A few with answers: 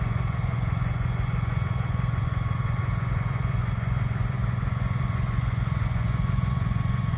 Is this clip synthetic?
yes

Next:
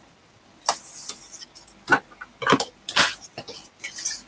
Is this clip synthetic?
no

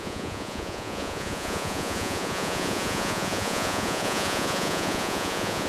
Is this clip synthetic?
yes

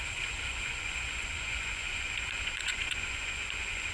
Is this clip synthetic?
yes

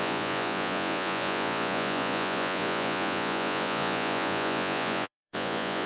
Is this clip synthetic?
yes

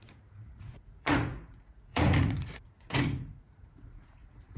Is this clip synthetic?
yes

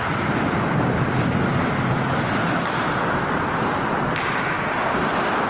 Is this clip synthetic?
no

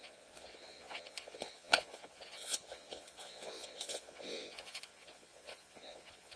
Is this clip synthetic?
yes